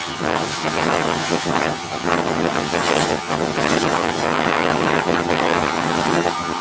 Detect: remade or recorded remade